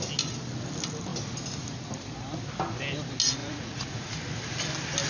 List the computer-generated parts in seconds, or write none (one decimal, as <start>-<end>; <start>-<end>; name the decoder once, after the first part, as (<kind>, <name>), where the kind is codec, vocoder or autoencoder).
3.4-4.1 (vocoder, Vocos)